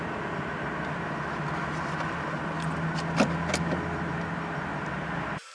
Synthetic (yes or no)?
no